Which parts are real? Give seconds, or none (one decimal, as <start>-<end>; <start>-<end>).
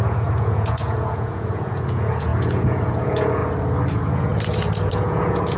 3.4-3.9; 4.3-4.8